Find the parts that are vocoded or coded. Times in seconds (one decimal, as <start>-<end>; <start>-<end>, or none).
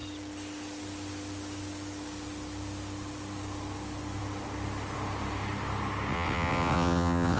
6.1-7.4